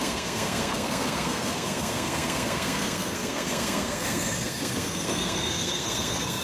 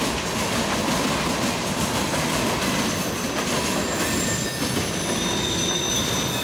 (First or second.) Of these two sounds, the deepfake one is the first